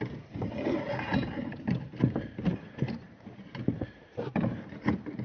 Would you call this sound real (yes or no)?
no